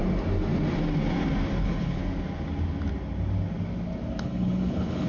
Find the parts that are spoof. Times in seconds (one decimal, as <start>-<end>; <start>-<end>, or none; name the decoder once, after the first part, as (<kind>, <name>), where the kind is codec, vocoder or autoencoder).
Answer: 1.6-2.0 (codec, HILCodec); 4.2-5.1